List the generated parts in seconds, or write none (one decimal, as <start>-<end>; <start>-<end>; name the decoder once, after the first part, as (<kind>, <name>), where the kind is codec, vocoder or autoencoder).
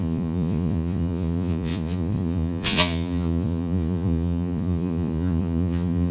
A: 0.0-6.1 (vocoder, Vocos)